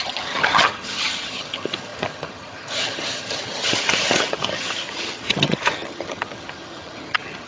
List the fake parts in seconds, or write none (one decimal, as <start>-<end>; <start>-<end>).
0.0-7.5